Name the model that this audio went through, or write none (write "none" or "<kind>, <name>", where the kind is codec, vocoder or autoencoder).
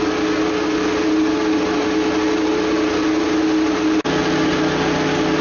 none